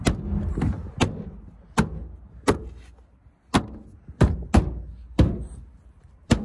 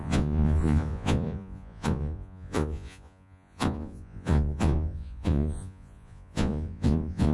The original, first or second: first